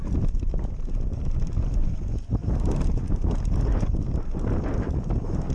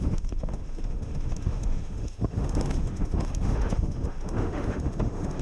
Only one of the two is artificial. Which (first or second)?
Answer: second